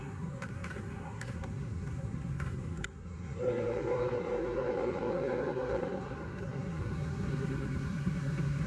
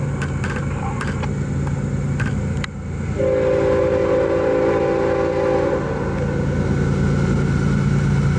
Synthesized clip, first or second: first